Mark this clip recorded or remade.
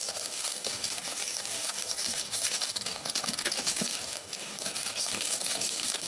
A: remade